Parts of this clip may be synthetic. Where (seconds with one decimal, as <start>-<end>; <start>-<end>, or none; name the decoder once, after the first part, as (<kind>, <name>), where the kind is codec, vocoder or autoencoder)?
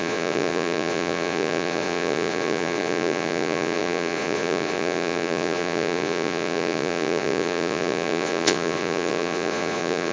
0.0-10.1 (vocoder, Vocos)